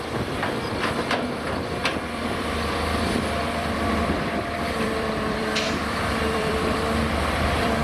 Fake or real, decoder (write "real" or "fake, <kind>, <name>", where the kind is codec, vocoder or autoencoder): fake, vocoder, BigVGAN v2